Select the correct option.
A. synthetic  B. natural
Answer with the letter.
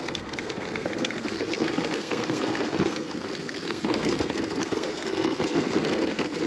A